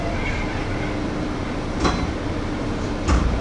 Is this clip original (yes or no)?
no